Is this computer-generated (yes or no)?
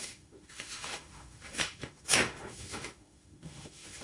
yes